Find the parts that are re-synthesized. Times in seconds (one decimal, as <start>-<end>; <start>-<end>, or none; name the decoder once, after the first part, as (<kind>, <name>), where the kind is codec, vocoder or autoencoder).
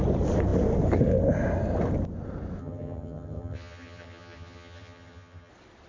2.6-5.5 (vocoder, HiFi-GAN)